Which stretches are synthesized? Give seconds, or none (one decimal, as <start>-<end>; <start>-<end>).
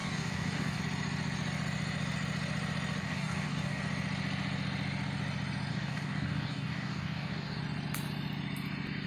0.0-0.8; 3.0-3.8; 5.7-7.6